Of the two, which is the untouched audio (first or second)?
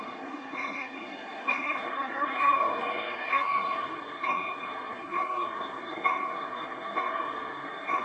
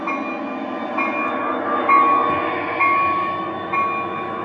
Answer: second